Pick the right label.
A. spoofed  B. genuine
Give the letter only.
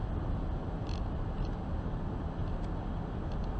B